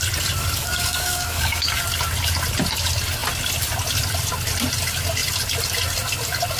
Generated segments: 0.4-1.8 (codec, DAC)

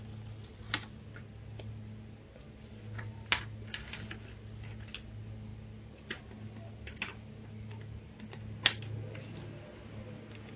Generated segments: none

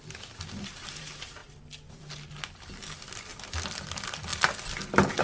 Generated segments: none

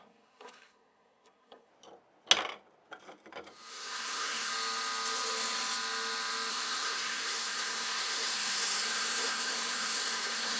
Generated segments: 0.0-1.7 (codec, SNAC); 3.7-4.5; 6.5-10.6

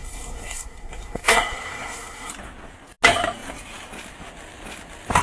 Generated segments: 0.0-2.3 (codec, SNAC)

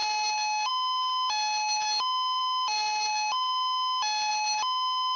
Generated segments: none

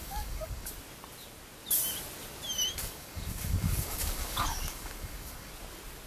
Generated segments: 0.0-0.7 (codec, DAC); 2.8-5.5

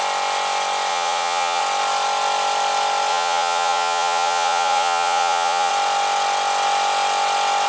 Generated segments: 0.9-1.6 (vocoder, Vocos); 3.1-5.7